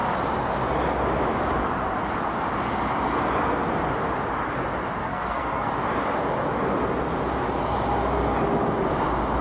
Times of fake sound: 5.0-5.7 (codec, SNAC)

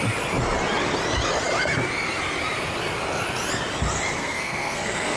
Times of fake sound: 4.2-5.2 (codec, SNAC)

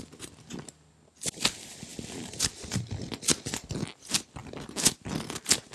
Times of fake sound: none

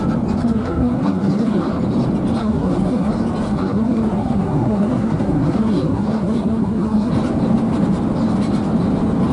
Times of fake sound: 0.4-1.7 (codec, SNAC); 2.4-3.1; 3.5-7.1

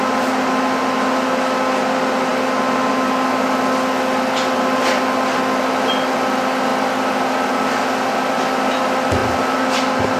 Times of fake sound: none